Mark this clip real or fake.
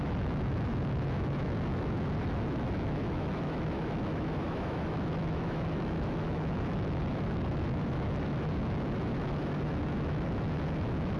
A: fake